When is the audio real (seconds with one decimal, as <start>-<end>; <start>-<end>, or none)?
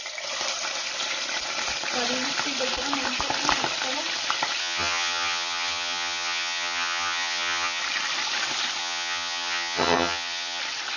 0.0-4.6; 7.8-8.8; 10.6-11.0